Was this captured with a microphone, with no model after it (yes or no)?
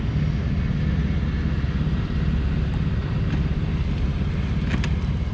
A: yes